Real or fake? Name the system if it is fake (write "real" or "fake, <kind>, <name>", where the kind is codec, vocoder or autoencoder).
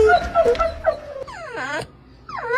real